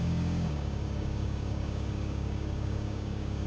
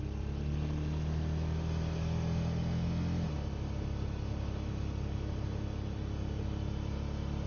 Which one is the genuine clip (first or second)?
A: second